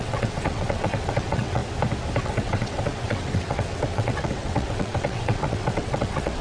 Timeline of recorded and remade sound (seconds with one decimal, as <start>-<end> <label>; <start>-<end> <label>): 0.0-1.6 remade; 1.6-2.2 recorded; 2.2-6.4 remade